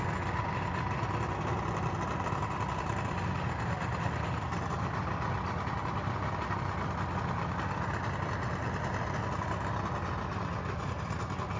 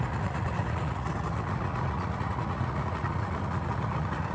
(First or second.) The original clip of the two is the first